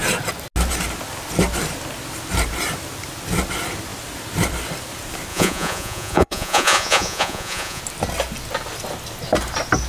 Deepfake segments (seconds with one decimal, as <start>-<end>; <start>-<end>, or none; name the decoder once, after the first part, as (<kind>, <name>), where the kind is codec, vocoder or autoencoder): 5.3-7.8 (vocoder, Vocos)